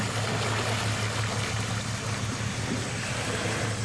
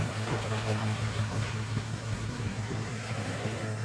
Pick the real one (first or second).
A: first